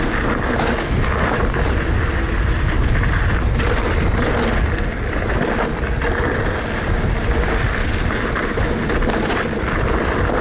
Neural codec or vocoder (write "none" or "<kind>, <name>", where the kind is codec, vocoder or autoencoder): none